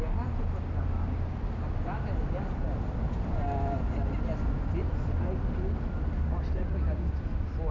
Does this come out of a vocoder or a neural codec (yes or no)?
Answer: no